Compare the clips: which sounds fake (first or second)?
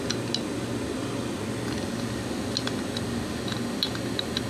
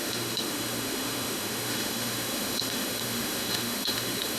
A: second